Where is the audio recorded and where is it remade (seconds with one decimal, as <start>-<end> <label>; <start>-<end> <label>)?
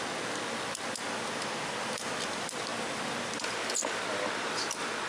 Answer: 0.0-5.1 recorded